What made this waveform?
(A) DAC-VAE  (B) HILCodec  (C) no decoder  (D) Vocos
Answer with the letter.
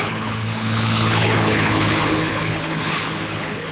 B